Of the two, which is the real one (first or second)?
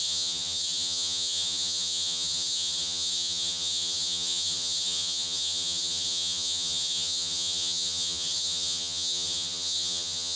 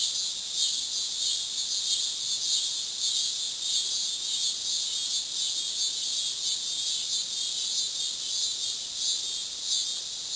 second